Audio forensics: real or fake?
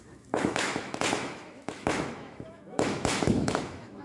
fake